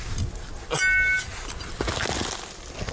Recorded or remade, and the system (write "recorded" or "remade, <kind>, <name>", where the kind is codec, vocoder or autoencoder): recorded